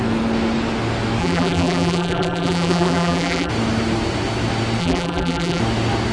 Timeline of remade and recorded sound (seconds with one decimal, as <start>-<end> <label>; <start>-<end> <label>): 0.0-1.2 recorded; 1.2-3.5 remade; 3.5-4.8 recorded; 4.8-5.6 remade; 5.6-6.1 recorded